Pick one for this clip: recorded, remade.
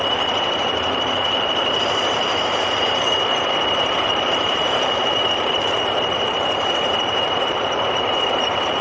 remade